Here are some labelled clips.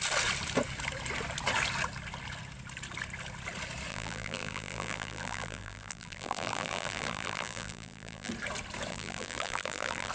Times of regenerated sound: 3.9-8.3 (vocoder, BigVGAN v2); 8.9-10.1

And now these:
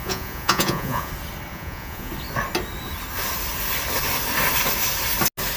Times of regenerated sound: 0.0-1.1 (vocoder, Vocos); 1.5-2.1

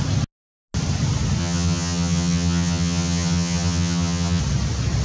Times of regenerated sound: 1.4-4.4 (vocoder, HiFi-GAN)